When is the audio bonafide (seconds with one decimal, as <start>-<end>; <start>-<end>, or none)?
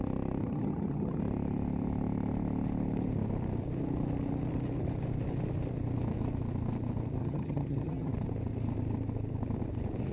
0.0-0.4; 1.2-7.2; 8.1-10.1